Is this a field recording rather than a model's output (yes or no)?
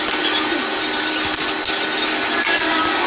yes